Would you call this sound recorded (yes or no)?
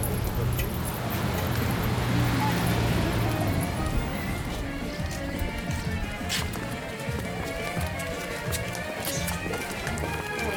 yes